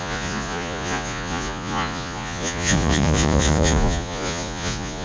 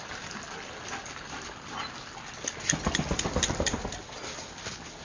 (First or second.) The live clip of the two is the second